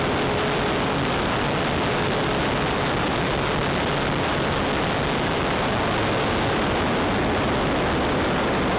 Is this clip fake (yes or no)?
no